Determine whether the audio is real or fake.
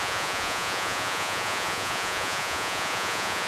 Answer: fake